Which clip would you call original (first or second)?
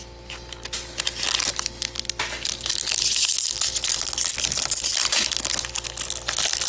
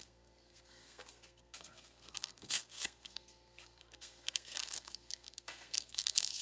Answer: first